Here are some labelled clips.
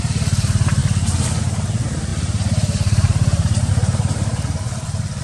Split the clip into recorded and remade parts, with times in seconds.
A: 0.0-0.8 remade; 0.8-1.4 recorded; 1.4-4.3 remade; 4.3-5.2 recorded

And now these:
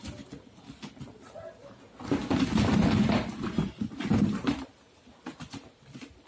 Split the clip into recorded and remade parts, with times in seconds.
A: 0.0-4.1 recorded; 4.1-4.7 remade; 4.7-6.3 recorded

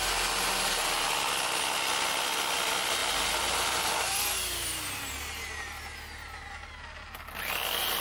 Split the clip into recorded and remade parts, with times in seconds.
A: 0.0-3.0 recorded; 3.0-4.9 remade; 4.9-8.0 recorded